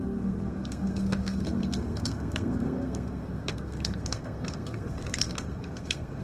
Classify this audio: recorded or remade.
remade